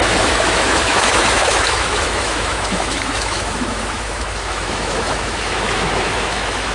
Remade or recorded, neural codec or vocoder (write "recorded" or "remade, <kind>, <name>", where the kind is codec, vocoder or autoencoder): remade, autoencoder, DAC-VAE